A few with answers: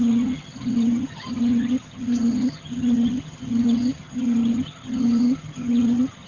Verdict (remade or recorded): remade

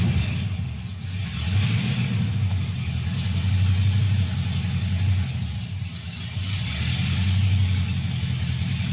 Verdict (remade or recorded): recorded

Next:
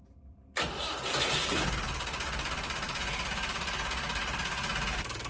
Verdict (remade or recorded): recorded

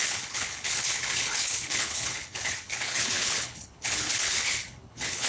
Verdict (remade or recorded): remade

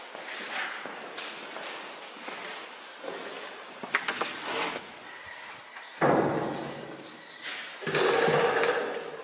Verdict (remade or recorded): recorded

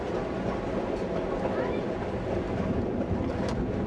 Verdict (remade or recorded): recorded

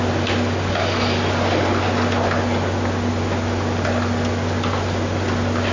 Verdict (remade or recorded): recorded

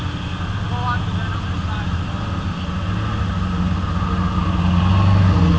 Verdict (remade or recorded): recorded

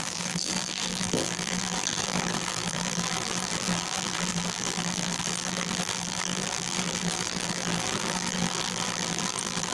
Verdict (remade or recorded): remade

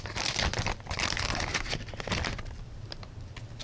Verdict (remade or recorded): recorded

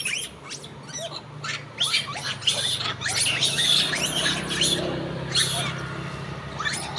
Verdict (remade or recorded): recorded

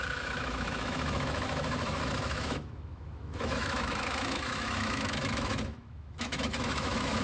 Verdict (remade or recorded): remade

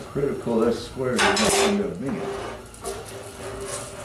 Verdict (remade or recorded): recorded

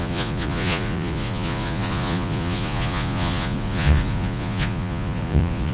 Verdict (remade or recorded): remade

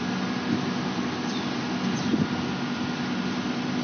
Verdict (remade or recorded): recorded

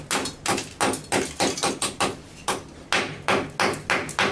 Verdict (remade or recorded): recorded